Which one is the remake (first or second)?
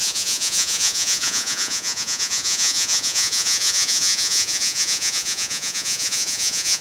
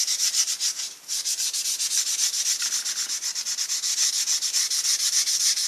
first